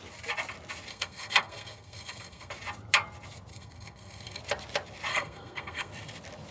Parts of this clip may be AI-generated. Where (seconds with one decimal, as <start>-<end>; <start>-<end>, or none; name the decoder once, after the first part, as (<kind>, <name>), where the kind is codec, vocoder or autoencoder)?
0.9-2.5 (codec, SNAC); 3.5-4.4; 5.1-5.9